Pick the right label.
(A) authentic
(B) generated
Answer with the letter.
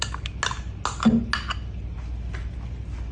A